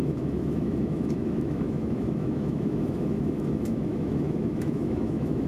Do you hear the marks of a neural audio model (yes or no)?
yes